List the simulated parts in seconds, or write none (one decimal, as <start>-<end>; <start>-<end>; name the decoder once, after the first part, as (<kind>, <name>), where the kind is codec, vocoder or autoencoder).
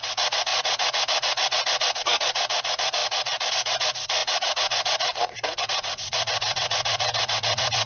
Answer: 0.0-7.9 (vocoder, WaveNeXt)